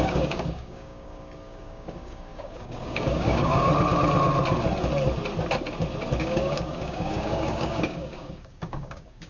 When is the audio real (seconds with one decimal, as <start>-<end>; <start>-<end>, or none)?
3.7-6.2

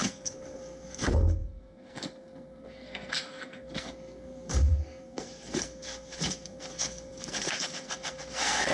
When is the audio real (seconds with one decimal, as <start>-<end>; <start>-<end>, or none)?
none

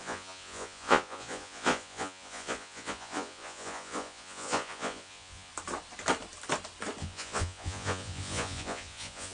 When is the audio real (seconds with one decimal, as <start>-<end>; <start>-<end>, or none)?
5.5-7.0